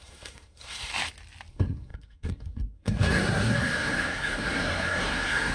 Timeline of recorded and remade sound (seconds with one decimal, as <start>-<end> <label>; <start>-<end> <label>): 0.0-0.9 remade; 0.9-1.5 recorded; 1.5-5.5 remade